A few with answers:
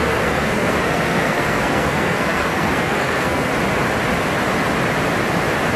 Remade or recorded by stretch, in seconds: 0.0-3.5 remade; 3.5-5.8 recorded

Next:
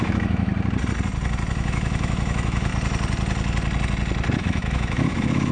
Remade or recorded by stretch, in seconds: 0.0-0.5 remade; 0.5-1.5 recorded; 1.5-2.7 remade; 2.7-4.4 recorded; 4.4-5.5 remade

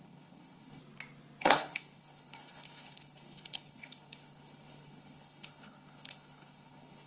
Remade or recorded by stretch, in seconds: 0.0-0.8 remade; 0.8-1.4 recorded; 1.4-7.1 remade

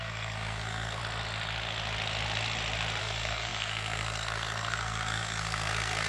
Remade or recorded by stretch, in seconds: 0.0-1.0 remade; 1.0-3.0 recorded; 3.0-6.1 remade

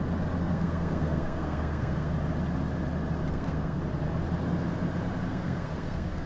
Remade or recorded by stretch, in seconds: 0.0-0.4 recorded; 0.4-2.1 remade; 2.1-3.3 recorded; 3.3-3.8 remade; 3.8-5.3 recorded; 5.3-6.3 remade

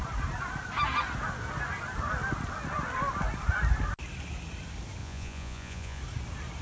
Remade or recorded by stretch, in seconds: 0.0-5.0 recorded; 5.0-6.0 remade; 6.0-6.6 recorded

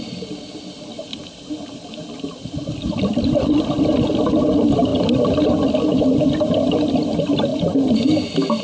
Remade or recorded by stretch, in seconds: 0.0-8.6 recorded

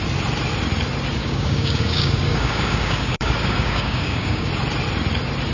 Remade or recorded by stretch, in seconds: 0.0-1.2 recorded; 1.2-4.5 remade; 4.5-5.5 recorded